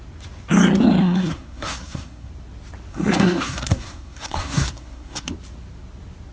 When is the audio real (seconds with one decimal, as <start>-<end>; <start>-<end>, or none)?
0.0-1.0; 2.3-2.9; 5.3-6.3